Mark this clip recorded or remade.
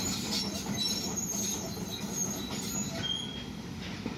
recorded